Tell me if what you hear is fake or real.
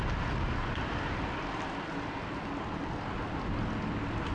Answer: real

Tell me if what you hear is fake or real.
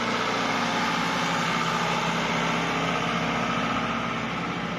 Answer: real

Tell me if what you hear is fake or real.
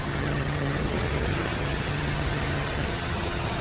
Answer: fake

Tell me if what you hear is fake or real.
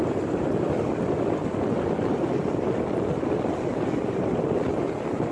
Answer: real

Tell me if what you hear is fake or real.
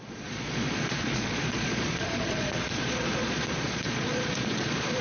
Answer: fake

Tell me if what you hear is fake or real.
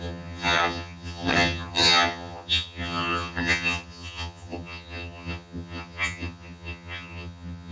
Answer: fake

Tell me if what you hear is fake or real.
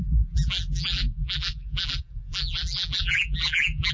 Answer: fake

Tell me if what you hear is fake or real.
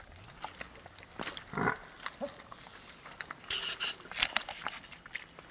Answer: real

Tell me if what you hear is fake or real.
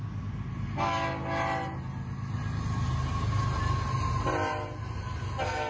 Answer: real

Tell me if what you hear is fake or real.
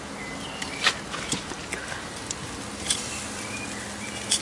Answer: real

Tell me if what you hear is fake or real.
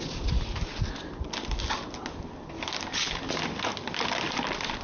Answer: real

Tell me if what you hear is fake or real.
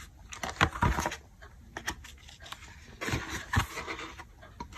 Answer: real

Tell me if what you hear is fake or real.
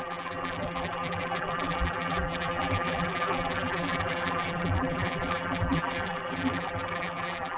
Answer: fake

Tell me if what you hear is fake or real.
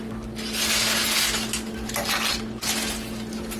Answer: real